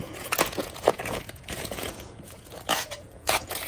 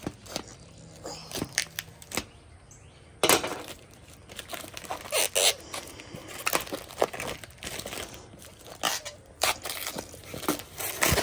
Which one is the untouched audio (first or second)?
second